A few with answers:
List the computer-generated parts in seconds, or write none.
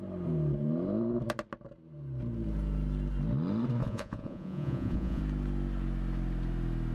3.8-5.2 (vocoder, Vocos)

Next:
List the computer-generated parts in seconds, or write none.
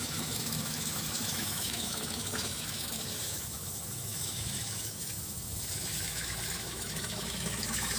0.0-8.0 (autoencoder, DAC-VAE)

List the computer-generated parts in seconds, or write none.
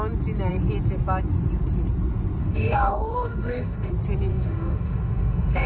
2.4-3.9 (autoencoder, DAC-VAE); 4.3-5.7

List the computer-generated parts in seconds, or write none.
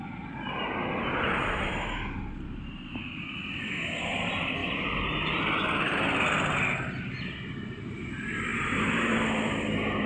4.6-5.4 (vocoder, BigVGAN v2); 8.5-9.5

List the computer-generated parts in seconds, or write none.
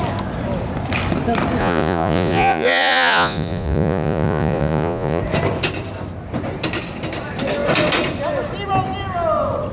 1.6-5.2 (vocoder, Vocos)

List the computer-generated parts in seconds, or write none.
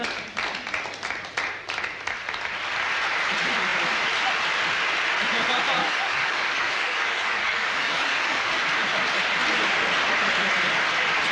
5.8-8.6 (codec, DAC)